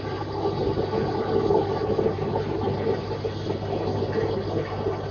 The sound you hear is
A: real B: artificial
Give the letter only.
A